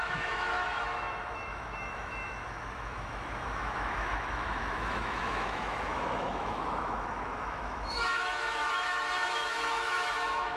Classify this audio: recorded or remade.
remade